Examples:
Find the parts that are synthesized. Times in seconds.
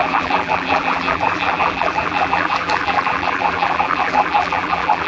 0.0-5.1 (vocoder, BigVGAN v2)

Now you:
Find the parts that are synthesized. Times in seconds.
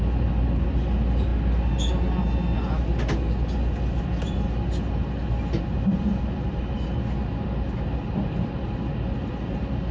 none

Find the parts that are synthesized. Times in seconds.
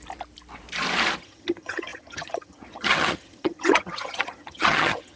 1.2-5.2 (vocoder, HiFi-GAN)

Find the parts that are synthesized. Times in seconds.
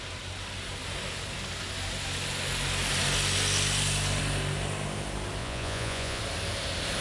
5.4-6.2 (vocoder, Vocos)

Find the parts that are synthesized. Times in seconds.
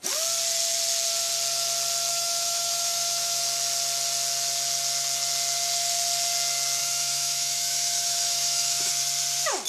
2.1-3.4 (autoencoder, DAC-VAE); 6.8-8.9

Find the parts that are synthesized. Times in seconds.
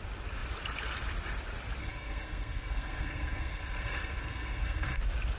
1.8-5.0 (codec, SNAC)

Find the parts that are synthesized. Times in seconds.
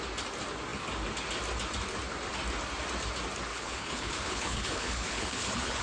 3.5-5.8 (codec, HILCodec)